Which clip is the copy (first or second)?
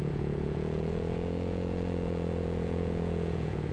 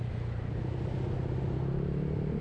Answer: first